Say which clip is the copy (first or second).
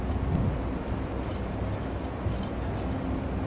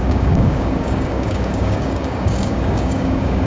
second